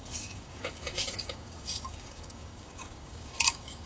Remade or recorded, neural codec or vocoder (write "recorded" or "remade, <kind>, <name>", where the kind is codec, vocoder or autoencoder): remade, codec, DAC